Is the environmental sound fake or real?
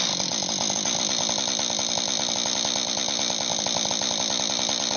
real